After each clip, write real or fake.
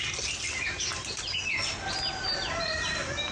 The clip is real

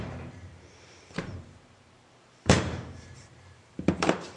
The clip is fake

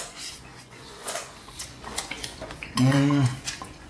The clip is fake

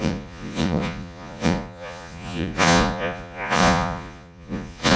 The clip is fake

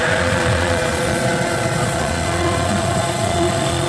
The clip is fake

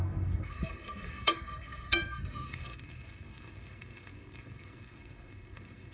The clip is fake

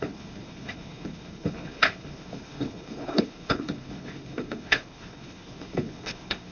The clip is fake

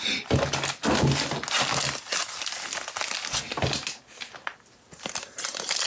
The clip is real